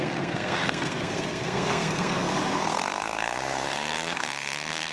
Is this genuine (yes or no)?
no